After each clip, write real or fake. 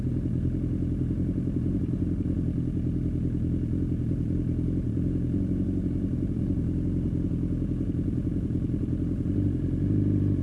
real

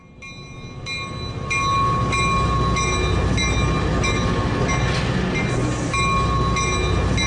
real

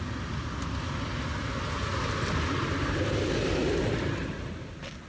real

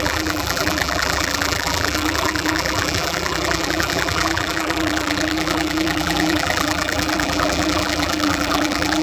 fake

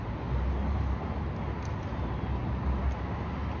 real